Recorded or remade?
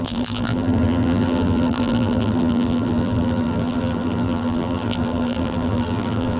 remade